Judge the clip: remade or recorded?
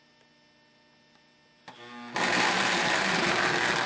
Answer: recorded